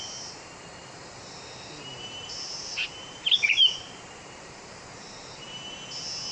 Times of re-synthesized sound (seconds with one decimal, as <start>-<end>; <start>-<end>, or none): 1.9-5.7